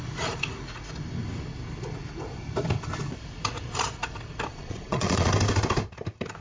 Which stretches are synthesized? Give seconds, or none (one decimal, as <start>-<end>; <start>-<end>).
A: 4.5-5.3